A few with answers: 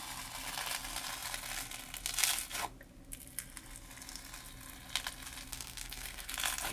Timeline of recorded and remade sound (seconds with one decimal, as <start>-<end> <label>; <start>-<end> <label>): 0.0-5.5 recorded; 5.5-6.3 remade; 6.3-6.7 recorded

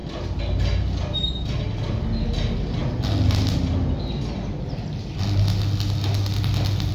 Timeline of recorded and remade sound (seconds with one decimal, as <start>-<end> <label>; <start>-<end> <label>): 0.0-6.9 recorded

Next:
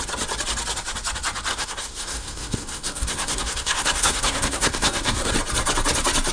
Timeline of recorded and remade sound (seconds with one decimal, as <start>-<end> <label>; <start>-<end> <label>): 0.0-1.5 recorded; 1.5-5.3 remade; 5.3-6.3 recorded